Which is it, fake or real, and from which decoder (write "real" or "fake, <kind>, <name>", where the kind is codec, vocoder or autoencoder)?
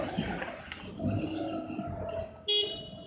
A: real